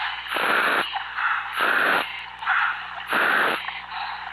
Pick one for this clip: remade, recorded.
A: recorded